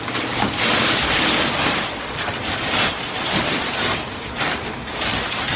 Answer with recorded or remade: recorded